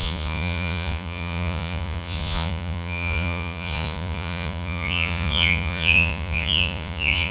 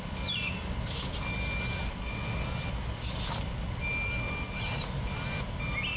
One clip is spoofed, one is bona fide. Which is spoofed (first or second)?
first